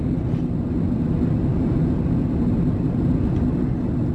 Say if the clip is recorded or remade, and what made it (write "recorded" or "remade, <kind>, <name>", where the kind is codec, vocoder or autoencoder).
recorded